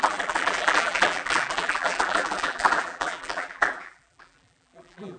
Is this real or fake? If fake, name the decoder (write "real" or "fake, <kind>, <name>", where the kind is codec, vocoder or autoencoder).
fake, vocoder, BigVGAN v2